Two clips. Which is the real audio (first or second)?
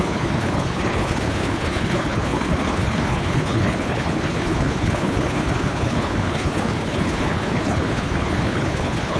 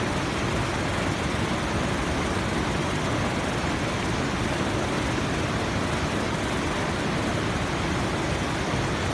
second